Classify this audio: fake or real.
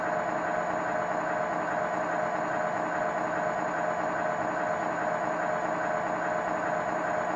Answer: real